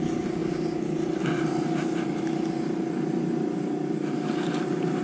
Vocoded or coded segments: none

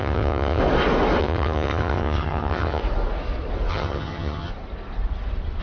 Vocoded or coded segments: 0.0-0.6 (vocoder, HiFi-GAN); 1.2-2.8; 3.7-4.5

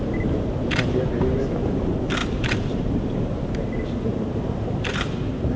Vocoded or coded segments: 0.0-5.6 (vocoder, BigVGAN v2)

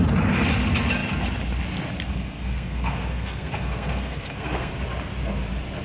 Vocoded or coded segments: 2.1-4.7 (codec, SNAC)

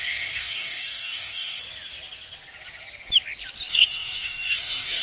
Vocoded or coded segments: 0.0-1.6 (codec, DAC); 3.7-5.0